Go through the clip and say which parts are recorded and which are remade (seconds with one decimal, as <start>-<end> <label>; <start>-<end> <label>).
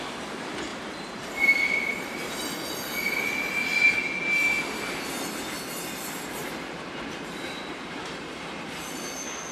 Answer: 0.0-0.7 recorded; 0.7-2.4 remade; 2.4-6.4 recorded; 6.4-8.5 remade; 8.5-9.5 recorded